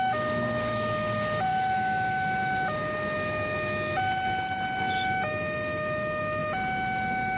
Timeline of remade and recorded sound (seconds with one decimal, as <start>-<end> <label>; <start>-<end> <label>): 0.0-2.8 remade; 2.8-4.8 recorded; 4.8-7.4 remade

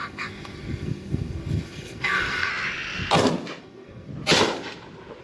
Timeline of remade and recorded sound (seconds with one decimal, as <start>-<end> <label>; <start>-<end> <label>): 0.0-2.5 remade; 2.5-3.6 recorded; 3.6-4.1 remade; 4.1-5.2 recorded

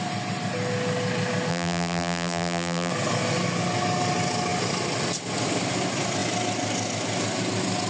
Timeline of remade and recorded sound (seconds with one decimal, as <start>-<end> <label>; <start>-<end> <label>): 0.0-1.5 recorded; 1.5-2.9 remade; 2.9-7.9 recorded

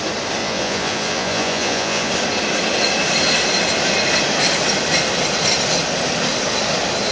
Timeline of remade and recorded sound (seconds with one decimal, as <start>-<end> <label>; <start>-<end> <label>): 0.0-0.4 recorded; 0.4-2.1 remade; 2.1-7.1 recorded